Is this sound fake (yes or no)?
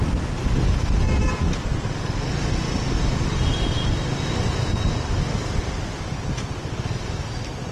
no